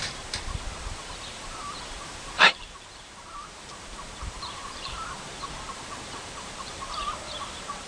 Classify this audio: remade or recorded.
remade